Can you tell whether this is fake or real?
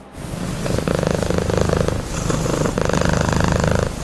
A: real